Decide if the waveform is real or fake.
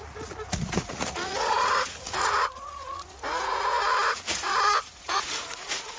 fake